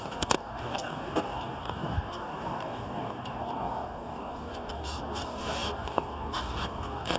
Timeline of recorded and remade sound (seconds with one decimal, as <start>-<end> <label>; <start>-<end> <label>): 0.0-7.2 remade